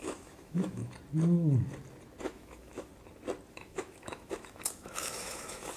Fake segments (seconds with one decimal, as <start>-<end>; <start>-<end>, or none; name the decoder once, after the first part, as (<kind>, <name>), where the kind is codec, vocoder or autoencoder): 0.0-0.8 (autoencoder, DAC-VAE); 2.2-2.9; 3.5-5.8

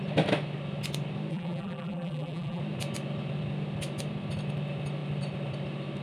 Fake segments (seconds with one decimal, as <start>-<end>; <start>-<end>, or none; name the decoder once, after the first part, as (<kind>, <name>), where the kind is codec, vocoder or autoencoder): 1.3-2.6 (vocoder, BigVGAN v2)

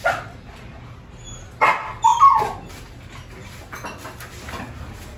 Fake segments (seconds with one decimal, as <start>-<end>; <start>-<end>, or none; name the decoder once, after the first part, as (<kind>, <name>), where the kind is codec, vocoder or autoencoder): none

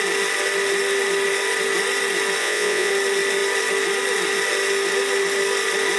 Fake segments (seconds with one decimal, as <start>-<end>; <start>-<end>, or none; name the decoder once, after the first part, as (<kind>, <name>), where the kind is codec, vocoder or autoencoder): 2.4-2.9 (vocoder, Vocos)